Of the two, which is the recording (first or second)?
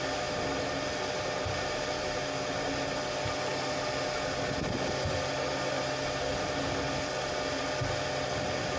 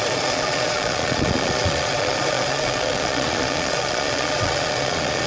first